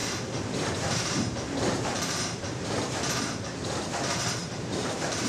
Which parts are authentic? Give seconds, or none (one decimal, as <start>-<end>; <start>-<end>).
3.2-4.4